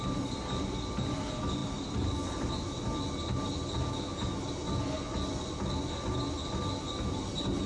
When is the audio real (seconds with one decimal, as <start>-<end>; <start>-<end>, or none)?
0.0-7.7